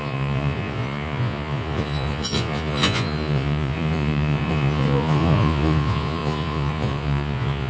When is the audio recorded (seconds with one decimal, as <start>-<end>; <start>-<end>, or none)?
none